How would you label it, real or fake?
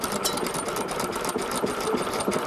fake